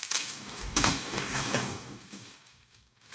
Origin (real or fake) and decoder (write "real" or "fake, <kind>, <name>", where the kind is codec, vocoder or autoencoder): fake, codec, DAC